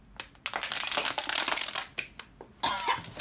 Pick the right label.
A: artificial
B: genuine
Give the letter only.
B